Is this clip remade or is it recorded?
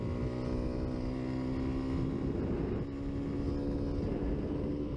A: recorded